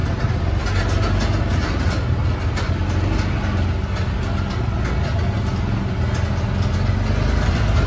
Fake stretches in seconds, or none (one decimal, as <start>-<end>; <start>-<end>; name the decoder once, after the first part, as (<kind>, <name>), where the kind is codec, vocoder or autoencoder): none